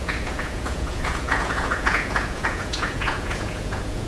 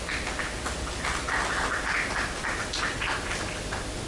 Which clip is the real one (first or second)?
second